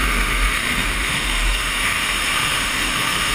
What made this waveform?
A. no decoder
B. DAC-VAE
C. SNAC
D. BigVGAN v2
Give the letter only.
B